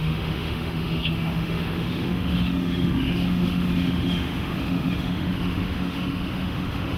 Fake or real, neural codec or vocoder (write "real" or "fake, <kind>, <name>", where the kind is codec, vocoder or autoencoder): fake, autoencoder, DAC-VAE